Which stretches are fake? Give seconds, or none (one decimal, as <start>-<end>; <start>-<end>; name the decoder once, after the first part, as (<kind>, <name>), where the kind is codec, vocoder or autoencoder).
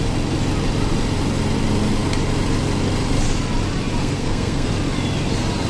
4.0-4.7 (codec, SNAC)